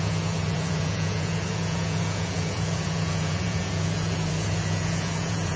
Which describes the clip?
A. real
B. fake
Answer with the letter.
B